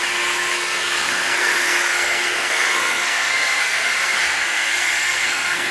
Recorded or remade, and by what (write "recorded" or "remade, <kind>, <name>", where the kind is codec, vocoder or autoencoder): remade, codec, SNAC